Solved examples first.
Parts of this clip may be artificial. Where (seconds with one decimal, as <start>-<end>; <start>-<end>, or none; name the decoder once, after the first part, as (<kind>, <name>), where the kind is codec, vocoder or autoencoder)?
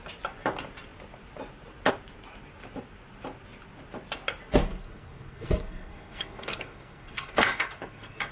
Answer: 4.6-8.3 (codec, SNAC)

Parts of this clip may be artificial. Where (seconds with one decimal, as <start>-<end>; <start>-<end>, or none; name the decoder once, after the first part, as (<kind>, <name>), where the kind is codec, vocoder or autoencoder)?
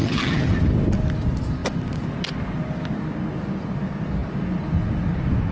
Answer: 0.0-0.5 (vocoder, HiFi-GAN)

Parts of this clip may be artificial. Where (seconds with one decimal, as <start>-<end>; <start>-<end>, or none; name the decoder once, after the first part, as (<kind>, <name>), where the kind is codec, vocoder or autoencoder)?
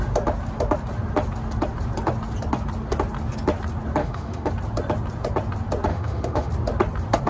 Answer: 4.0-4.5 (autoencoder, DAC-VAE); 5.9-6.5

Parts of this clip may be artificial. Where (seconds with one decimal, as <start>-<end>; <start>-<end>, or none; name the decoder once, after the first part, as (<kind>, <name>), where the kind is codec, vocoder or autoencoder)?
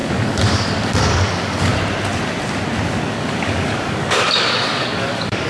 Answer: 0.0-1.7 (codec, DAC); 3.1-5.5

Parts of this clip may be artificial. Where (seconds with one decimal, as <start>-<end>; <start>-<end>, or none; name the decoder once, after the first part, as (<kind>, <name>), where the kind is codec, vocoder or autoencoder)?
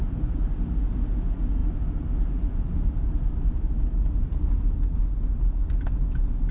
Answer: none